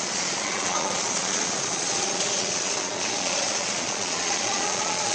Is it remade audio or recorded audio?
remade